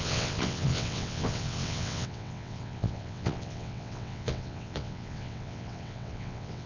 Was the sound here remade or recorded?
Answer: remade